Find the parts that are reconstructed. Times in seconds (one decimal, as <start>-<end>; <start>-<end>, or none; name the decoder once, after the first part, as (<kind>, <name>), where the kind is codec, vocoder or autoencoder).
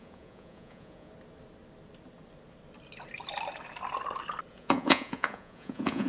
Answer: 0.0-1.1 (vocoder, Vocos); 4.5-6.1